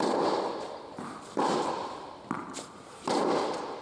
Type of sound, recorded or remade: recorded